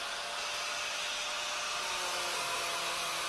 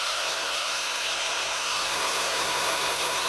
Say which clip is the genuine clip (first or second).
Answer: first